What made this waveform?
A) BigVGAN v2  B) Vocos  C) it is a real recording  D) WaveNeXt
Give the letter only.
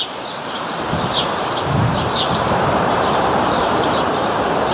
A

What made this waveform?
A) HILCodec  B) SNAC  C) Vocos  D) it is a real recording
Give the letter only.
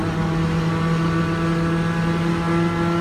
D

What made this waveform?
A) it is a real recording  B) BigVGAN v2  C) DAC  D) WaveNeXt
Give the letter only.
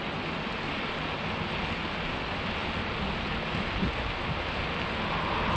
A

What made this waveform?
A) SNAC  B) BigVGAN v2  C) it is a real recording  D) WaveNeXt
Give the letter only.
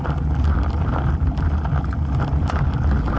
C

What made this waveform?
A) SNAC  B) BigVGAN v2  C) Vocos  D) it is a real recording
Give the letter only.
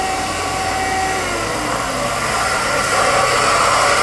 D